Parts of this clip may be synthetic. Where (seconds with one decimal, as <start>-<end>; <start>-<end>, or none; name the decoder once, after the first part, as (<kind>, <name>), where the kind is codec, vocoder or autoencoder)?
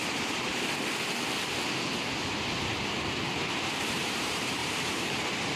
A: 0.0-0.5 (vocoder, BigVGAN v2); 3.9-5.6